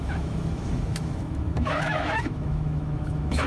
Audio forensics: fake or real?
fake